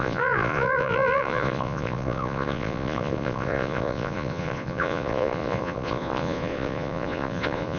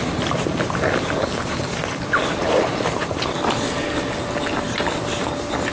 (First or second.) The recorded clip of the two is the second